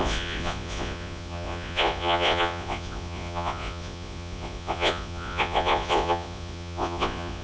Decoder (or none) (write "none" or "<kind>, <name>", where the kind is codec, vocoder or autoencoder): vocoder, Vocos